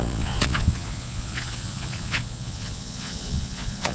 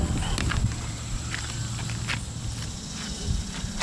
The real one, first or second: second